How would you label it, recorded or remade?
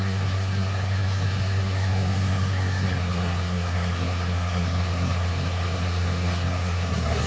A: remade